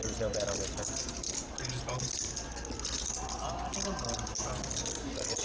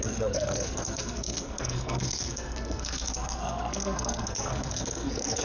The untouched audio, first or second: first